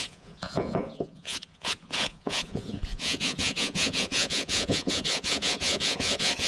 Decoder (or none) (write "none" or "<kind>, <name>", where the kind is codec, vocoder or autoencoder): vocoder, Vocos